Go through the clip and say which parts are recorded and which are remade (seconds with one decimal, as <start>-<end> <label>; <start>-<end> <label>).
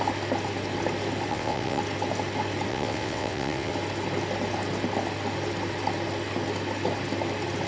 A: 0.0-1.3 recorded; 1.3-1.8 remade; 1.8-2.7 recorded; 2.7-3.7 remade; 3.7-7.7 recorded